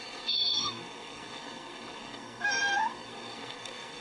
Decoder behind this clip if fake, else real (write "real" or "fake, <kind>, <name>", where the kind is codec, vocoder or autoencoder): fake, codec, SNAC